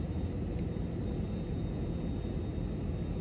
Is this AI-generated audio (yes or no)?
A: no